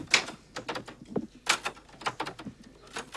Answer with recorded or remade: recorded